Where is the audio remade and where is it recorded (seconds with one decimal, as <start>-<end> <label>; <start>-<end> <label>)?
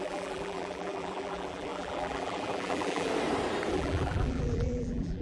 0.0-3.1 remade; 3.1-3.7 recorded; 3.7-5.2 remade